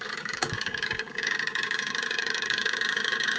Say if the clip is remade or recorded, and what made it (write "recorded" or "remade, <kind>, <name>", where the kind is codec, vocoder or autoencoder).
remade, codec, DAC